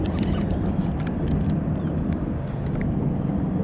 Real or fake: real